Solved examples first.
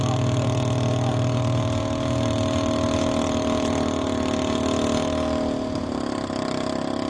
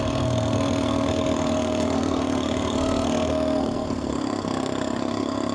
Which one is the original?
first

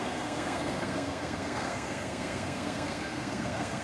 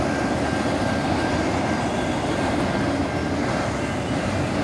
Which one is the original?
second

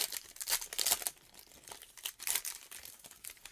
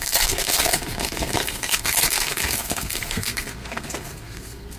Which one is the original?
first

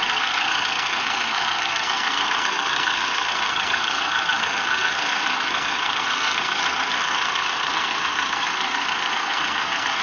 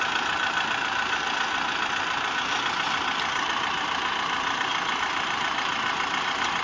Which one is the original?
second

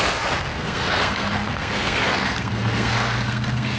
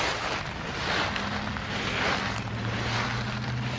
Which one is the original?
second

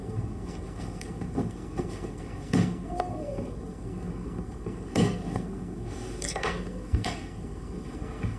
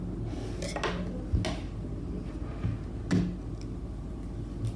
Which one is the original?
second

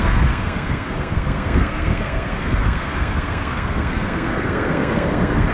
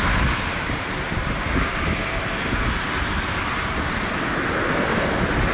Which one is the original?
second